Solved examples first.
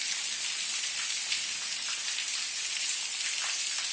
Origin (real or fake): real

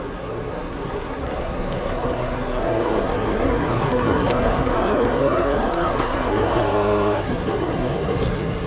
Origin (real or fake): fake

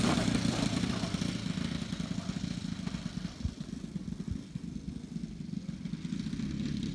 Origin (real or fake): real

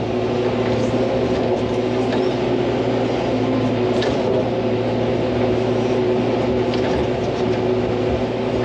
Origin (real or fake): real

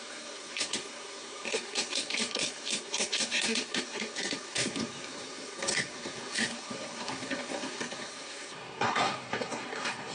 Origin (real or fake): fake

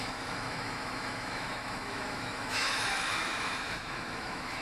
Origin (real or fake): fake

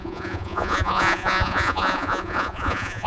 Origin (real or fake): fake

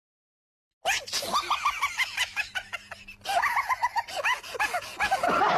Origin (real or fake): real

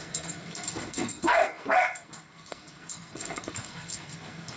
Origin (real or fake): fake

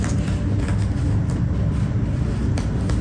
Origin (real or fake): real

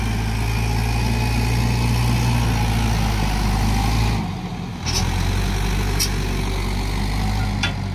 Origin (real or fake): real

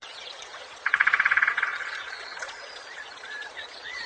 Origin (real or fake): fake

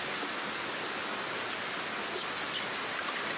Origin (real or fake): real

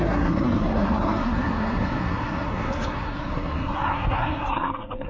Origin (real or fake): fake